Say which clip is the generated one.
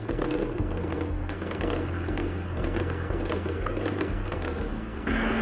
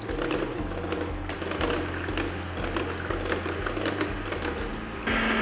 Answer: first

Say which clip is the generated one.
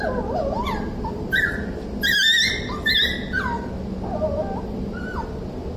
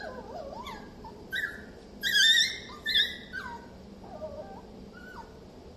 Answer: second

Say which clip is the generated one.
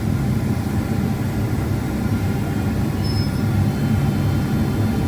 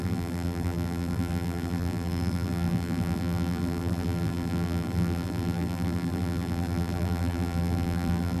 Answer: second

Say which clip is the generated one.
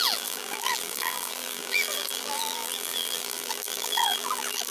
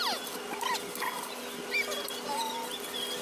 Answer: first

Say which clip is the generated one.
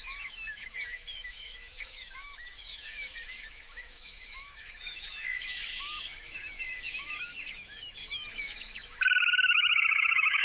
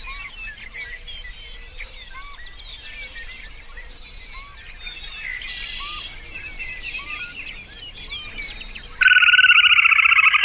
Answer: first